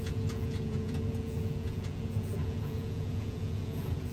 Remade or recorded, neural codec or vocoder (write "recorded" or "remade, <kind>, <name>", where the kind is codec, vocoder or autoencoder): remade, vocoder, Vocos